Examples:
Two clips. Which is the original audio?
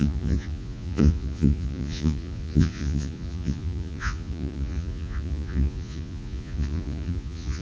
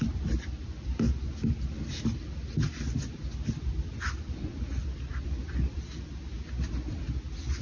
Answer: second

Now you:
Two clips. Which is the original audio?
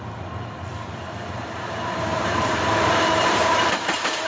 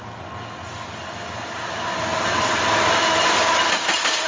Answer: second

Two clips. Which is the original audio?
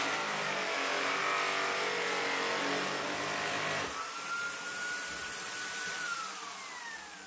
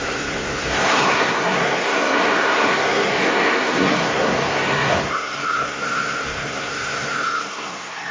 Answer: first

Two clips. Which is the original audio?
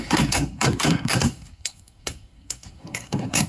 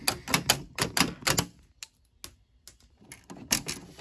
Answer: second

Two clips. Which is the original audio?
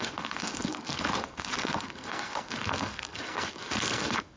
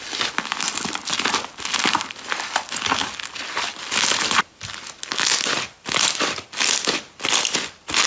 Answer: second